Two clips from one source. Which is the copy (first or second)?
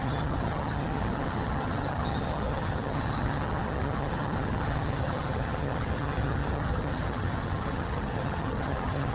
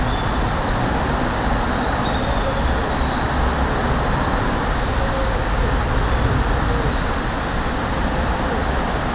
first